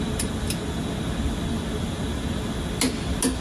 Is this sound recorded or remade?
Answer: recorded